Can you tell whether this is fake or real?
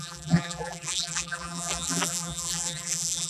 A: fake